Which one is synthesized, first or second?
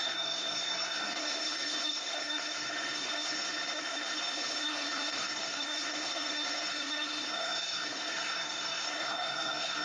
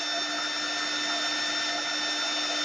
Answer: first